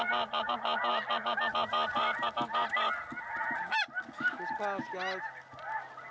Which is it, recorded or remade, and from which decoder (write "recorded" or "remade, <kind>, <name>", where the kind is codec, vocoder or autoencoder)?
recorded